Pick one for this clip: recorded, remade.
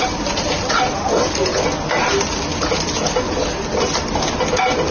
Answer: recorded